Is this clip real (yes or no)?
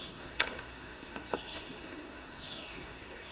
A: no